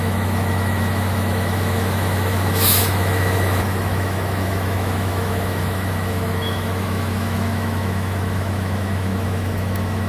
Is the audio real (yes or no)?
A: no